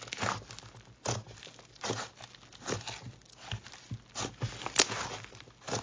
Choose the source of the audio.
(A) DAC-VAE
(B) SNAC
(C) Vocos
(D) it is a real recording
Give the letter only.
D